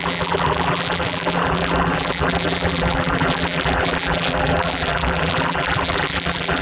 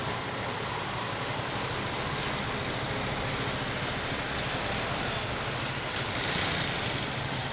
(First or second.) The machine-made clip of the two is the first